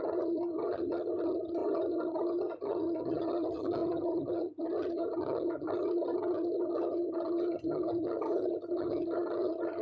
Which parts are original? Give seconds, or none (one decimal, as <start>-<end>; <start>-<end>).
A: none

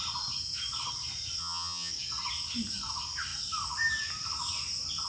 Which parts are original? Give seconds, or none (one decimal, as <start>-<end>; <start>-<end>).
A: 0.0-1.4; 1.9-5.1